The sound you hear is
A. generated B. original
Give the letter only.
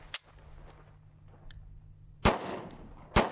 B